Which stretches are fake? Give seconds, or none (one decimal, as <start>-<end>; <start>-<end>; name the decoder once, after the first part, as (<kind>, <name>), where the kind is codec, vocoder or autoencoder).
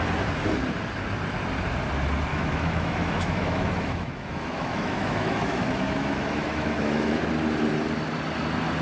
2.3-7.2 (autoencoder, DAC-VAE)